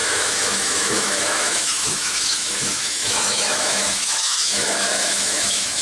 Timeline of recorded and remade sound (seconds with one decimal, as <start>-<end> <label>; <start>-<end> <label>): 0.0-5.8 remade